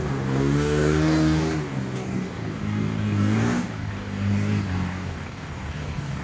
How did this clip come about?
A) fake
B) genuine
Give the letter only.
A